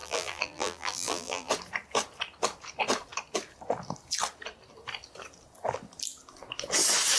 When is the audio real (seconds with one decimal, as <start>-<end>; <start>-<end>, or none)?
1.5-7.2